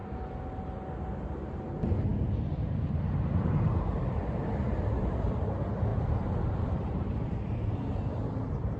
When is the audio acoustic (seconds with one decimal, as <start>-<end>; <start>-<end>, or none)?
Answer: 0.0-0.6; 5.9-6.5